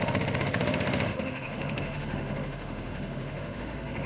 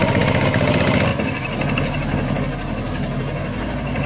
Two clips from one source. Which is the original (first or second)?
second